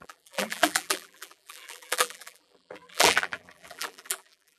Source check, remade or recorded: remade